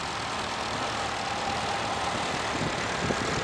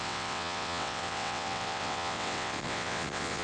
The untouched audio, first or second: first